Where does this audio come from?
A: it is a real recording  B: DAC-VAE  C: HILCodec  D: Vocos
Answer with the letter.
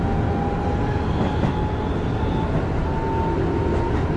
A